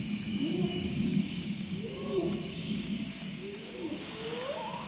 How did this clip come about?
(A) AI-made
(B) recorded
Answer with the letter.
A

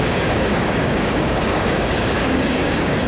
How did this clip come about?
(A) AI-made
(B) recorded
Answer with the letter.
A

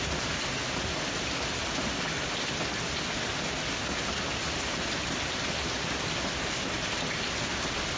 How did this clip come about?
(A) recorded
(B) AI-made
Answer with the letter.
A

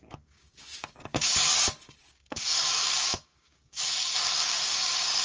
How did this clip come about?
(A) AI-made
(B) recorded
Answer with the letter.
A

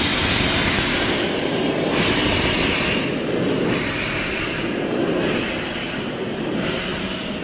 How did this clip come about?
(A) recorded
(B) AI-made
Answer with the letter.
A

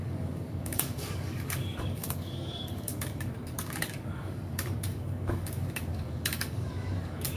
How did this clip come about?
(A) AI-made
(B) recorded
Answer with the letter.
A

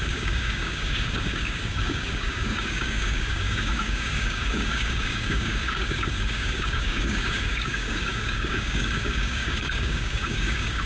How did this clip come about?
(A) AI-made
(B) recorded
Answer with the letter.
A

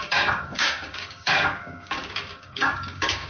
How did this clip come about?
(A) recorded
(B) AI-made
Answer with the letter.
B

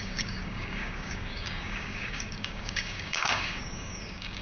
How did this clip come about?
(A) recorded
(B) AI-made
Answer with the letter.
B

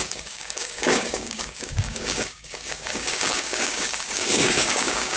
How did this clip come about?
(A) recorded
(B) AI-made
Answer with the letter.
B